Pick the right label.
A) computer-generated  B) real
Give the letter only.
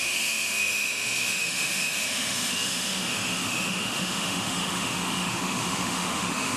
A